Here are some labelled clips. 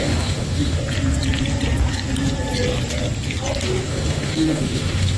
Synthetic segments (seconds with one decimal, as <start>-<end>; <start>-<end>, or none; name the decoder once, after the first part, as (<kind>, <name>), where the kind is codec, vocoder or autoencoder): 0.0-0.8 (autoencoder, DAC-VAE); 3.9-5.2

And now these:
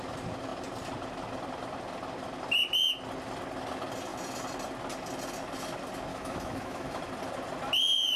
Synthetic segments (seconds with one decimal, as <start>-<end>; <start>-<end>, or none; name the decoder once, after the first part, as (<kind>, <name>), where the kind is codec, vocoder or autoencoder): 6.1-7.0 (autoencoder, DAC-VAE)

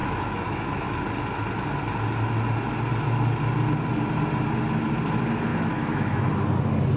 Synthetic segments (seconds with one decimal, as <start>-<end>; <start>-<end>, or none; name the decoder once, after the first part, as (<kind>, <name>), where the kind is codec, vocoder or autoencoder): 0.0-1.0 (autoencoder, DAC-VAE); 5.5-6.3